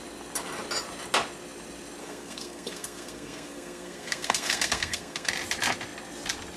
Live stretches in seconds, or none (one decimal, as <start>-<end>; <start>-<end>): 0.0-2.0; 5.3-6.6